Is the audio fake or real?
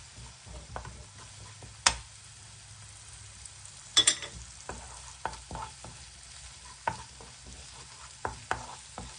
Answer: real